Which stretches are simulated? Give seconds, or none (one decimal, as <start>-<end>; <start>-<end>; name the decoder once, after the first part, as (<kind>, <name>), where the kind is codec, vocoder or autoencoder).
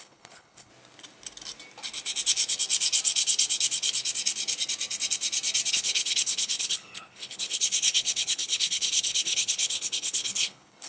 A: 0.0-0.7 (codec, HILCodec); 5.7-10.9